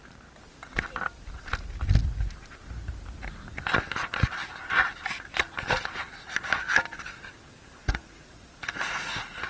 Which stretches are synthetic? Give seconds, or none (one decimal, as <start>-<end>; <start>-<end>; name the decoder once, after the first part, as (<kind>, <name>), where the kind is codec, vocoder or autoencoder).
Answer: 7.8-9.5 (vocoder, Vocos)